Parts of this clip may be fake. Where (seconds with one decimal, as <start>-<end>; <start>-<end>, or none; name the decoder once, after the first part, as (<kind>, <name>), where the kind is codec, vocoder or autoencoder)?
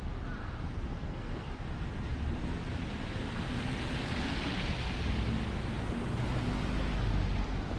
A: 0.4-1.5 (codec, SNAC)